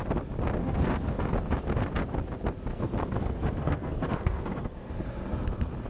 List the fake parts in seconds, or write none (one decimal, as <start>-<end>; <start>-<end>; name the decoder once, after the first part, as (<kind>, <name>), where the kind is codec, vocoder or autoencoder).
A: 0.6-1.3 (codec, SNAC); 2.7-4.9